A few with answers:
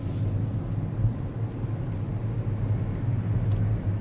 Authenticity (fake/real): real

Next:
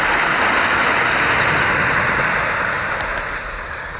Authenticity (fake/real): real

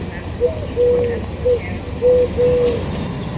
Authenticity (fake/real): real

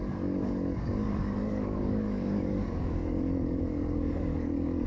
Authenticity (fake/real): fake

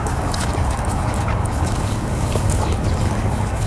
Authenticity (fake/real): fake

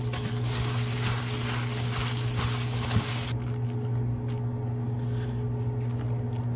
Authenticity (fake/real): real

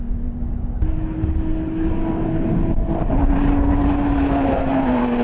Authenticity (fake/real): real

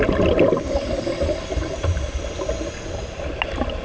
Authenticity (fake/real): real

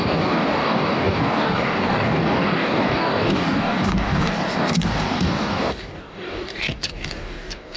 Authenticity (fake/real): fake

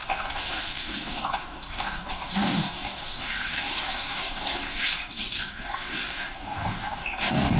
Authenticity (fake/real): fake